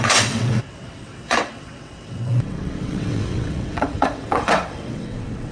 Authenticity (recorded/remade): remade